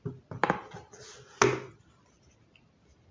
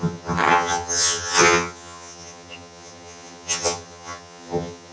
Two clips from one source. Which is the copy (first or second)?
second